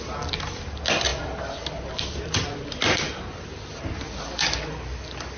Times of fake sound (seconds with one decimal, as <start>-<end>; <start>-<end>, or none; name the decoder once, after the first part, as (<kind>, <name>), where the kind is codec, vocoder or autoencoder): 1.1-3.4 (vocoder, BigVGAN v2)